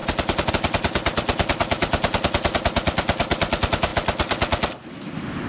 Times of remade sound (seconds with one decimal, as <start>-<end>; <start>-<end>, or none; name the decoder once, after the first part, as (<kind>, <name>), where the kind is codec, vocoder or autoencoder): none